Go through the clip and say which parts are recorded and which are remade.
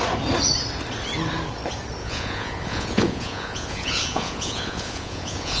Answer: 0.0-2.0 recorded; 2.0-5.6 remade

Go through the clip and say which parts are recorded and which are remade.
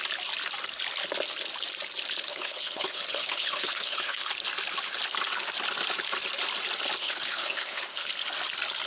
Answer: 0.0-2.3 recorded; 2.3-4.3 remade; 4.3-7.0 recorded; 7.0-8.1 remade; 8.1-8.9 recorded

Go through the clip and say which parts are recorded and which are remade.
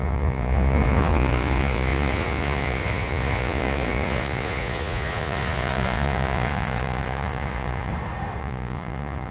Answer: 0.0-7.9 remade; 7.9-8.4 recorded; 8.4-9.3 remade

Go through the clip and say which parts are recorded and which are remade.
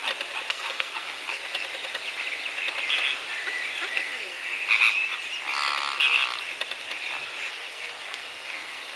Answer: 0.0-0.5 recorded; 0.5-1.4 remade; 1.4-3.9 recorded; 3.9-4.6 remade; 4.6-7.5 recorded; 7.5-9.0 remade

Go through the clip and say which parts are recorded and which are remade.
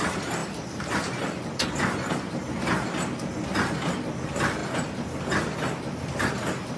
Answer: 0.0-6.8 recorded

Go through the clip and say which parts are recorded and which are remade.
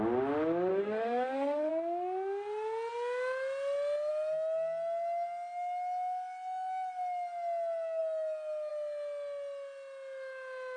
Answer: 0.0-0.7 recorded; 0.7-1.7 remade; 1.7-10.8 recorded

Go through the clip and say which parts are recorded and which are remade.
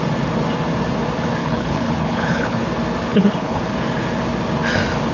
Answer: 0.0-1.4 recorded; 1.4-2.6 remade; 2.6-3.1 recorded; 3.1-3.6 remade; 3.6-5.1 recorded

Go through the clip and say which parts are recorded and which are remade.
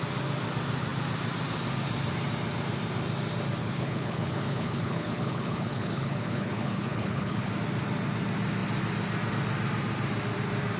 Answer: 0.0-3.6 recorded; 3.6-7.5 remade; 7.5-10.8 recorded